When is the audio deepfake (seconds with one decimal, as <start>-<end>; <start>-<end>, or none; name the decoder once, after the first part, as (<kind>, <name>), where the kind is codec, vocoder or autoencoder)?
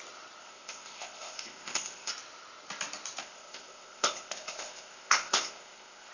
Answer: 0.4-2.1 (codec, ZipCodec); 3.2-6.1